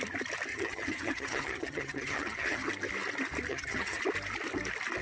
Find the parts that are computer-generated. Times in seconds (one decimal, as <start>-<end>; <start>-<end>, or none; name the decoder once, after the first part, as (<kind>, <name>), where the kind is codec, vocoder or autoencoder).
0.5-2.7 (vocoder, HiFi-GAN); 3.5-4.0